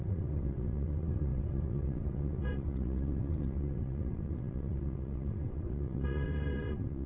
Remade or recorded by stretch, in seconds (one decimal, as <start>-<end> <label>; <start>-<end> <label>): 0.0-7.1 remade